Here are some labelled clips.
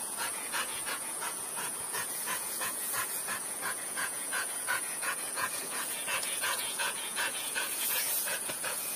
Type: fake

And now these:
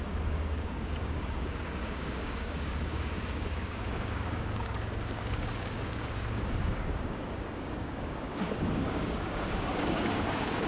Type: fake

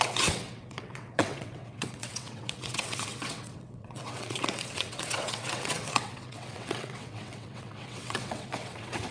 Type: fake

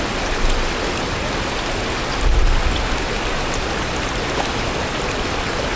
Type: real